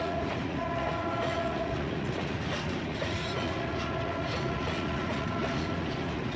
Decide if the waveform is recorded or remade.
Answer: remade